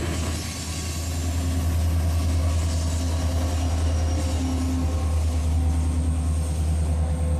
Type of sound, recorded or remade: recorded